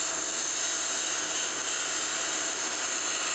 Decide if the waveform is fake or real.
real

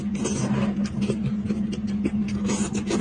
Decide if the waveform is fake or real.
real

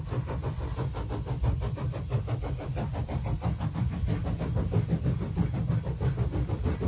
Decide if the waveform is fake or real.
real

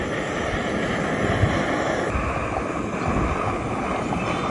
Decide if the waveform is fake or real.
real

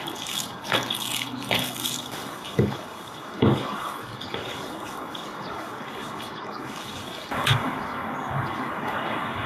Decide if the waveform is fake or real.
fake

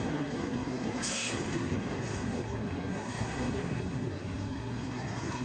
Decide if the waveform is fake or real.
fake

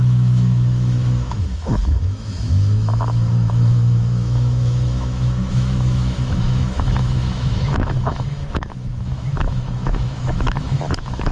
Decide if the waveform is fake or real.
fake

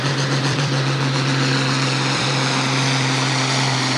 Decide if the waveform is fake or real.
fake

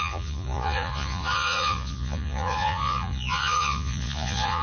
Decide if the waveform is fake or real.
fake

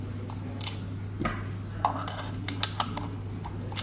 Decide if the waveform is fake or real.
real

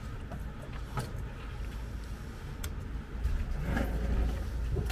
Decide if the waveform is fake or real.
real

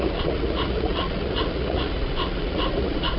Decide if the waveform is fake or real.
fake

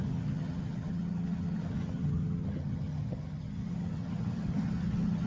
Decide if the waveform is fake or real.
fake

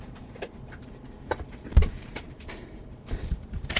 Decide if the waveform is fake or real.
fake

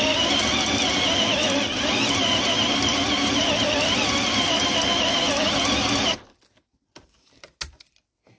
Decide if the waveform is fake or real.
real